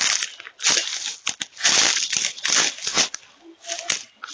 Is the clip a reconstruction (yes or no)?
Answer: no